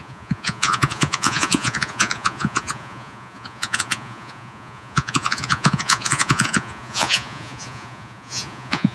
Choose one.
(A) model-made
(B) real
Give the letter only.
A